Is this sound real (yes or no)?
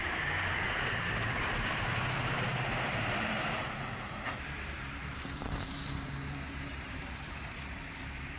no